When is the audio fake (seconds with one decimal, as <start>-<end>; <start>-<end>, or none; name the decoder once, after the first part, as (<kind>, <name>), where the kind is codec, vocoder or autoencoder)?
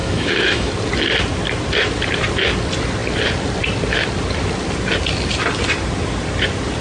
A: 0.0-0.7 (autoencoder, DAC-VAE)